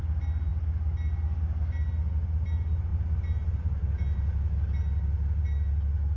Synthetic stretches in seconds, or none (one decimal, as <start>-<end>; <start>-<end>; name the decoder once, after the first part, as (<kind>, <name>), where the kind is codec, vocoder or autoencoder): none